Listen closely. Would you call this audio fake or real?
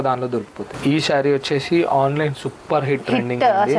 real